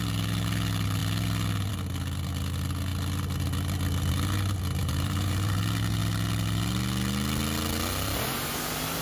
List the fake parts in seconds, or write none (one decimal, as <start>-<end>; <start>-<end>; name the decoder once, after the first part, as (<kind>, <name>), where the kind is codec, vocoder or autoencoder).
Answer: 4.8-5.6 (vocoder, BigVGAN v2)